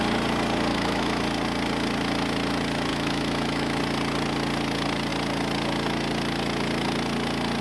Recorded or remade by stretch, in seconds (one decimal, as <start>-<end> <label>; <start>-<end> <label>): 0.0-0.7 recorded; 0.7-1.2 remade; 1.2-2.9 recorded; 2.9-3.8 remade; 3.8-7.6 recorded